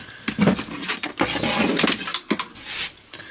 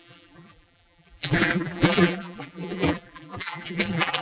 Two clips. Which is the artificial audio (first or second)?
second